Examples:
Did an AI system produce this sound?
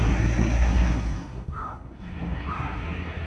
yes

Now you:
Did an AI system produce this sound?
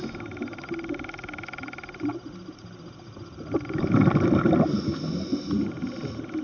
no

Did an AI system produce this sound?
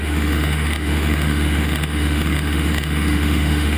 yes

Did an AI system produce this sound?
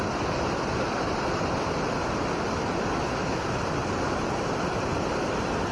no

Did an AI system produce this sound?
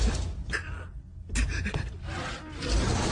no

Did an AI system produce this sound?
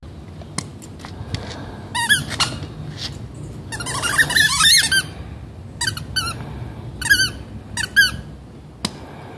no